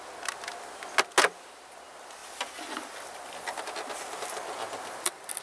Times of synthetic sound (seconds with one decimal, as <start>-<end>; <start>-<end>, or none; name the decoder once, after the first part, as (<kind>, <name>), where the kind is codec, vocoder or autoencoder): none